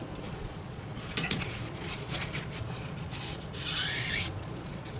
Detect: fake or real fake